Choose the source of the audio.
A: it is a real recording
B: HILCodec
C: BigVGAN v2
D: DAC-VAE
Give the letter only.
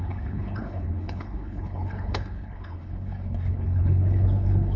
B